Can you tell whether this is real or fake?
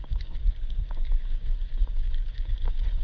fake